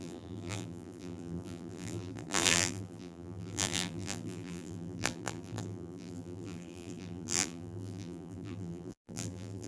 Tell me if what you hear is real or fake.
fake